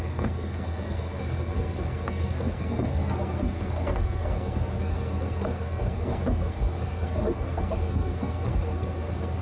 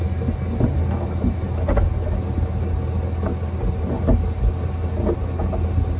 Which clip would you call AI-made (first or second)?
first